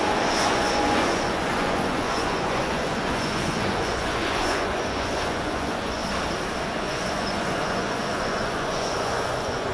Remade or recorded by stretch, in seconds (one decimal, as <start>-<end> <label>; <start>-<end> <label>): 0.0-6.0 remade; 6.0-6.7 recorded; 6.7-9.7 remade